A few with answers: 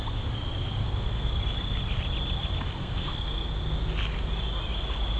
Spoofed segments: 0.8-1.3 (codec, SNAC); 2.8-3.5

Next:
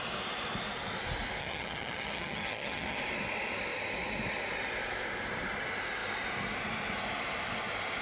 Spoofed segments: 1.4-3.0 (vocoder, HiFi-GAN)

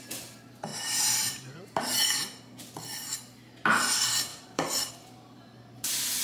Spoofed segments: 0.7-1.8 (vocoder, BigVGAN v2); 4.3-4.9

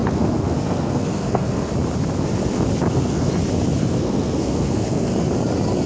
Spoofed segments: 0.0-1.7 (codec, SNAC); 2.9-3.3; 3.8-5.1

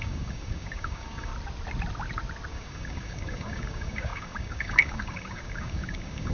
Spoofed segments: 0.0-1.3 (codec, DAC); 2.5-6.3